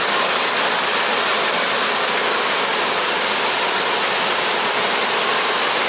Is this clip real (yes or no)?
yes